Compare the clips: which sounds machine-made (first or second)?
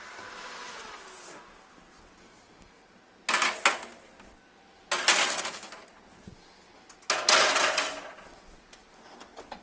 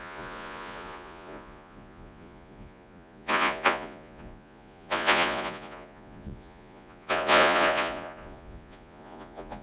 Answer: second